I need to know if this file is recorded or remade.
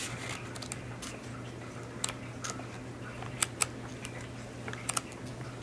recorded